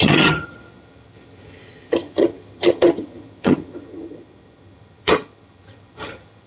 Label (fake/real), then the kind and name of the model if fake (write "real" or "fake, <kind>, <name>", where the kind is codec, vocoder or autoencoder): fake, vocoder, HiFi-GAN